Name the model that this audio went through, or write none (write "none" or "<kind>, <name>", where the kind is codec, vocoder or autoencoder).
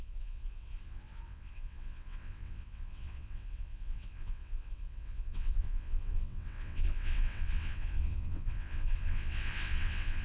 vocoder, WaveNeXt